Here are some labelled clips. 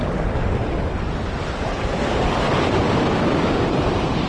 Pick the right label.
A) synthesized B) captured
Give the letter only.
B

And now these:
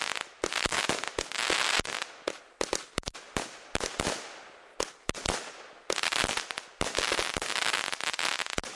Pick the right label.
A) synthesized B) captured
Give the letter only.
B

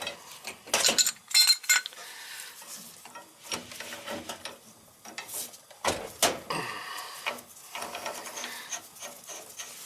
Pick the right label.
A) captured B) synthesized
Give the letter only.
A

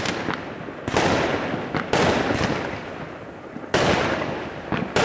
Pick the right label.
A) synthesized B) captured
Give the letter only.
B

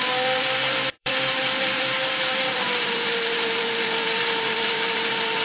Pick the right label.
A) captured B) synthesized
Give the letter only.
B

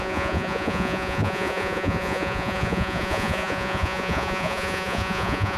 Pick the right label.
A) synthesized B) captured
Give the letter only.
A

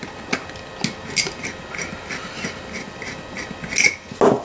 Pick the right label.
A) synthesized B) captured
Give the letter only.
B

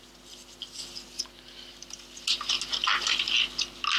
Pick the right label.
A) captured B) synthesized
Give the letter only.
A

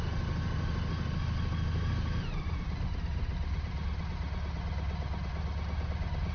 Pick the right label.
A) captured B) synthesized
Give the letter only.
A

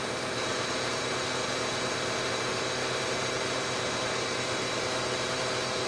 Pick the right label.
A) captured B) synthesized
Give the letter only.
B